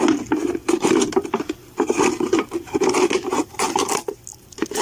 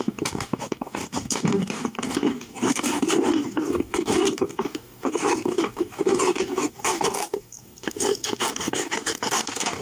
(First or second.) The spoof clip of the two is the second